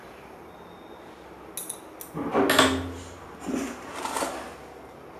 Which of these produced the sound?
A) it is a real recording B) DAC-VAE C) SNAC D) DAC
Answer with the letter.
A